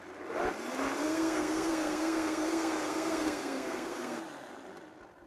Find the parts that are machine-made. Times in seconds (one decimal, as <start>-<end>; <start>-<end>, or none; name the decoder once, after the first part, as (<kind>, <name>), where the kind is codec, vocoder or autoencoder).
1.0-4.2 (codec, SNAC)